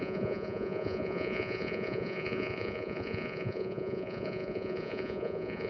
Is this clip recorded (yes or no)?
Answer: no